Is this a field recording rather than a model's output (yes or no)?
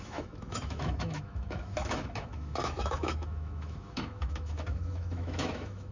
no